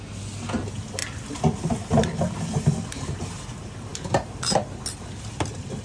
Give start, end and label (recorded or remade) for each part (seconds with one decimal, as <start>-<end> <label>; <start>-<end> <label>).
0.0-5.8 recorded